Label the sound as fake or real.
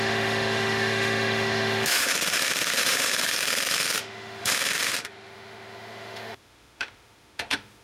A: fake